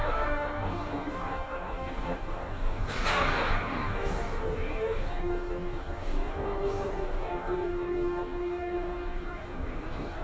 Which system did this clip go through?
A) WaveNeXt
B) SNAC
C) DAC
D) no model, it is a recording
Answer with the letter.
C